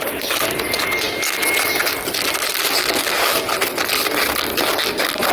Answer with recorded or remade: recorded